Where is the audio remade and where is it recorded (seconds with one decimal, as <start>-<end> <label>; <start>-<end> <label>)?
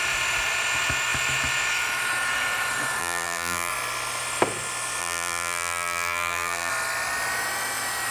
0.0-3.0 recorded; 3.0-3.7 remade; 3.7-5.0 recorded; 5.0-6.7 remade; 6.7-8.1 recorded